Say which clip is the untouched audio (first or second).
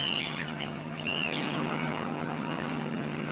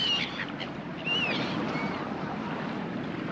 second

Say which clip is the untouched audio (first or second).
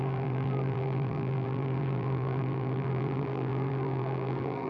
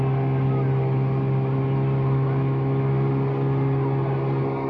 second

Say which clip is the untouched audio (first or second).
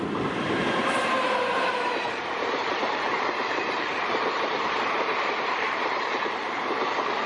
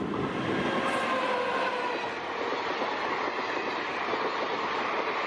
second